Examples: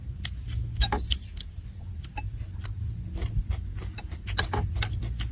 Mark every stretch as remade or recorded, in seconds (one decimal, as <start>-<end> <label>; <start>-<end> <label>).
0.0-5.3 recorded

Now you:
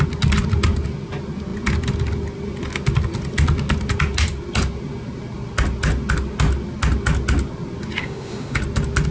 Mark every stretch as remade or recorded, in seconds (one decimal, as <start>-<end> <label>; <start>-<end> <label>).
0.0-8.0 recorded; 8.0-8.6 remade; 8.6-9.1 recorded

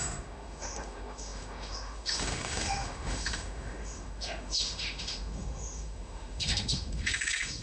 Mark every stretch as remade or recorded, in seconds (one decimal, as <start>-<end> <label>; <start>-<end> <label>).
0.0-7.6 remade

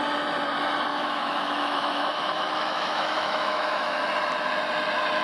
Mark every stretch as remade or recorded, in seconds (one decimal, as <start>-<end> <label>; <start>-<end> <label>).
0.0-0.9 recorded; 0.9-4.0 remade; 4.0-5.2 recorded